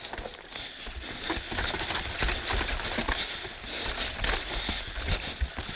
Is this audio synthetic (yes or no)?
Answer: no